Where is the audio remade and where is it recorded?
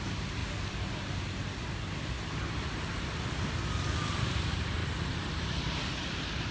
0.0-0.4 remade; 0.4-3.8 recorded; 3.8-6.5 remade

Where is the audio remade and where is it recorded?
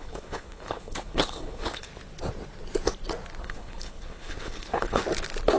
0.0-1.9 remade; 1.9-3.4 recorded; 3.4-5.0 remade; 5.0-5.6 recorded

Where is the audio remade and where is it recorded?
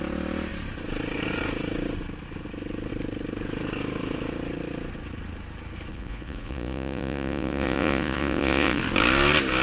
0.0-5.9 recorded; 5.9-8.8 remade; 8.8-9.6 recorded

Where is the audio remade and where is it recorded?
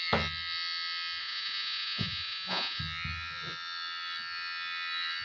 0.0-1.2 recorded; 1.2-2.8 remade; 2.8-5.2 recorded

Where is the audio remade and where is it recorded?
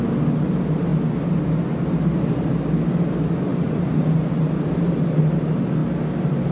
0.0-3.5 recorded; 3.5-4.8 remade; 4.8-6.5 recorded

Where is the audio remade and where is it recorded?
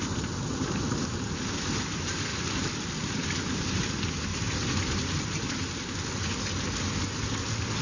0.0-2.3 recorded; 2.3-3.8 remade; 3.8-4.3 recorded; 4.3-5.2 remade; 5.2-7.8 recorded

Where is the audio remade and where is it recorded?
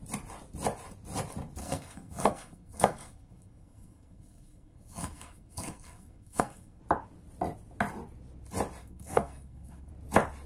0.0-1.6 recorded; 1.6-6.8 remade; 6.8-8.8 recorded; 8.8-9.9 remade; 9.9-10.5 recorded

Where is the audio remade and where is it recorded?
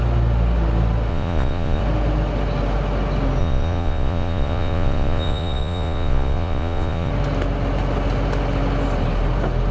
0.0-1.1 recorded; 1.1-1.8 remade; 1.8-3.4 recorded; 3.4-7.1 remade; 7.1-9.7 recorded